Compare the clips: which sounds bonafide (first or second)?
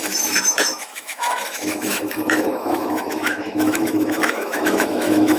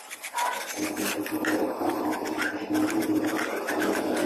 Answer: second